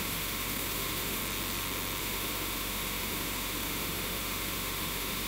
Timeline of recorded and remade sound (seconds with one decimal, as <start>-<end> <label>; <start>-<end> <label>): 0.0-1.2 remade; 1.2-2.0 recorded; 2.0-5.3 remade